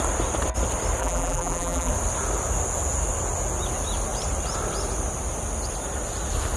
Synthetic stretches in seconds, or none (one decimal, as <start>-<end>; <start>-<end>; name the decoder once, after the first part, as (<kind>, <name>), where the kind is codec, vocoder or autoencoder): 1.0-1.9 (vocoder, BigVGAN v2)

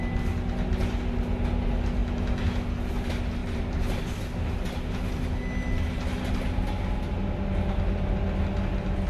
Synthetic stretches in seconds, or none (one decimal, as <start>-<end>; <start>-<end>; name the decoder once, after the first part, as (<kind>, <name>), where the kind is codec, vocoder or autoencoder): 3.4-4.0 (vocoder, BigVGAN v2)

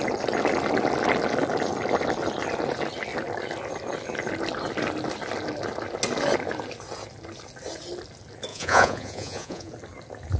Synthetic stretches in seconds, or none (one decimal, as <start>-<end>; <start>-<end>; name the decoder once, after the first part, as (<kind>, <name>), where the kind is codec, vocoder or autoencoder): 8.5-9.7 (vocoder, Vocos)

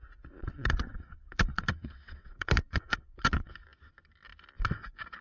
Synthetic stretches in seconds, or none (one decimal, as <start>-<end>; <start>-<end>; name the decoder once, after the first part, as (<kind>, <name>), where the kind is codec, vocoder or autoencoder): 0.4-3.5 (vocoder, WaveNeXt)

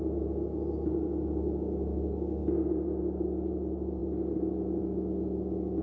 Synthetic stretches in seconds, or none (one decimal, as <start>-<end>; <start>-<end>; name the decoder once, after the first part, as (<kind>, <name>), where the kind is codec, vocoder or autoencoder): none

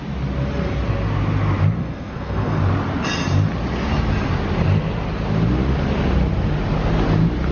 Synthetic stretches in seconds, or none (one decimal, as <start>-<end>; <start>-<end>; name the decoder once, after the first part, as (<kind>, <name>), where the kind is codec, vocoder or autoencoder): 1.8-2.6 (codec, SNAC)